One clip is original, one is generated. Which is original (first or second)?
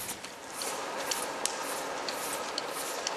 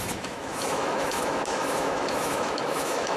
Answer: first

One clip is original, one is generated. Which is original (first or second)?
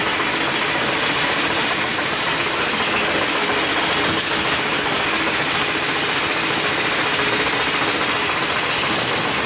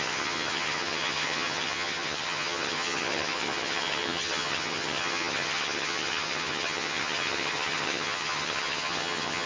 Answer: first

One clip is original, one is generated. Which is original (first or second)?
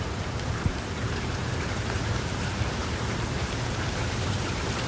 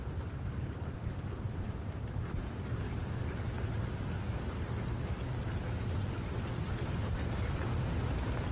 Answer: second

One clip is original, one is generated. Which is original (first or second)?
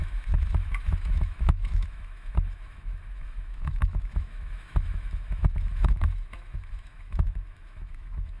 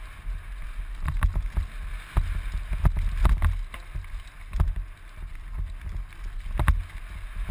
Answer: second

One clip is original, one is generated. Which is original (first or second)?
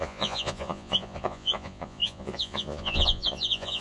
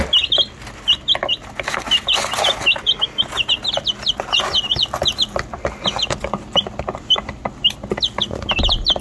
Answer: second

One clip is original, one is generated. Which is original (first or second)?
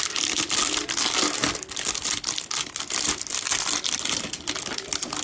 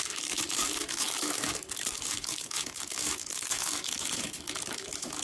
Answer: first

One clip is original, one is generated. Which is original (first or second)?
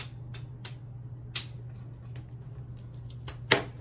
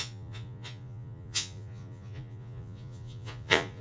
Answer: first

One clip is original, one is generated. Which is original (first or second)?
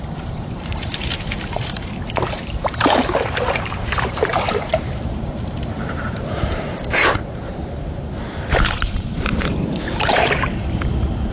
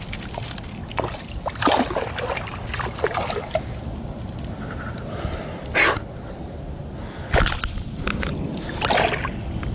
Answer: second